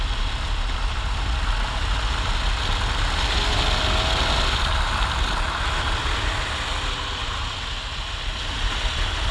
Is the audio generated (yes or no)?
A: no